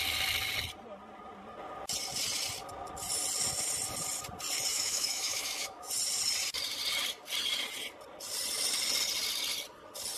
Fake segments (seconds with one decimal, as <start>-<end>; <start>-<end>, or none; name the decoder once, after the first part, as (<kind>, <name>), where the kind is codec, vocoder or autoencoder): 4.7-5.9 (autoencoder, DAC-VAE)